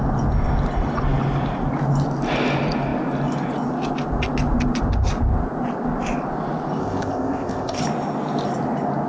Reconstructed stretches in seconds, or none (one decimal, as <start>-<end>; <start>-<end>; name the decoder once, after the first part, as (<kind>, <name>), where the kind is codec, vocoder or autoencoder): 6.8-7.8 (codec, ZipCodec)